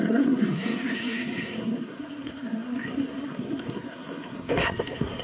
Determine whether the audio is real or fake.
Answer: fake